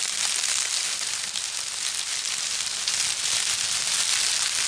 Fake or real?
real